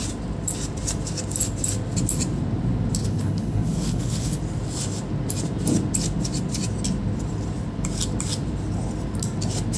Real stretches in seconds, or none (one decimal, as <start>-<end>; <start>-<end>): 0.0-3.0; 4.4-9.8